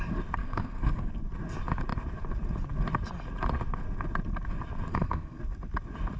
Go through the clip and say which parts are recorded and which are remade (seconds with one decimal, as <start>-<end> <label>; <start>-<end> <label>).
0.0-0.4 recorded; 0.4-1.1 remade; 1.1-4.9 recorded; 4.9-5.4 remade; 5.4-6.2 recorded